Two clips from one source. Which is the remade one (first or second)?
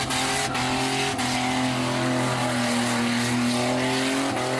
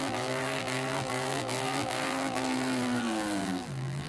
second